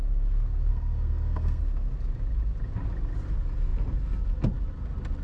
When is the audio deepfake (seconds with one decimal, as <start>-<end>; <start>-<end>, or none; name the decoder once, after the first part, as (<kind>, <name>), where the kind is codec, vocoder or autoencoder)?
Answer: 0.7-1.6 (codec, SNAC)